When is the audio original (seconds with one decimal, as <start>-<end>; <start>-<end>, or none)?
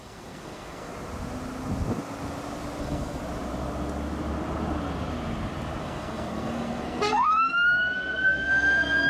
0.9-2.8; 3.2-5.8